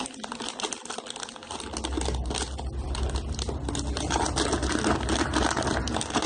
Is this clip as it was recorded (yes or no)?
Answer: yes